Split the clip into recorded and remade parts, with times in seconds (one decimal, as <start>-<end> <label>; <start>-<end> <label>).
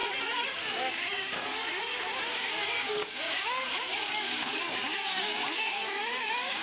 0.0-6.6 remade